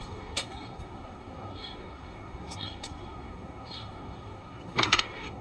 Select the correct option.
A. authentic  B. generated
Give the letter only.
B